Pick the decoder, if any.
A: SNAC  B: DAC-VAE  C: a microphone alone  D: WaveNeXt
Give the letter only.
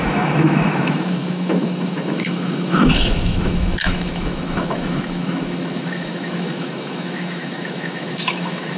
B